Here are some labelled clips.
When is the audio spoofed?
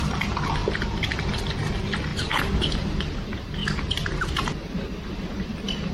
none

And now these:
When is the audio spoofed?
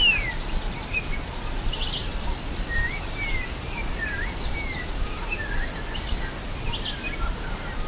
2.0-5.7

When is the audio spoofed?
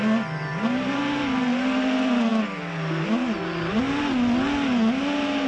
0.5-1.0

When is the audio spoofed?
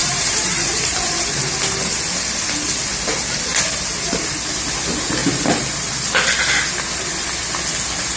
0.0-1.4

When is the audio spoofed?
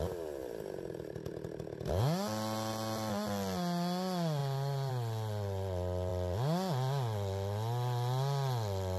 0.4-1.3; 4.4-4.9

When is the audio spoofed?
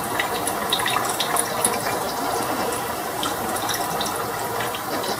0.6-3.7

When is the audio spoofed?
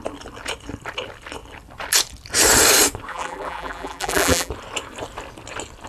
3.1-4.5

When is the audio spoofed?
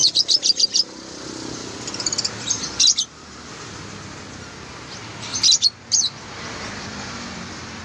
0.0-0.6; 1.6-3.5; 5.3-7.8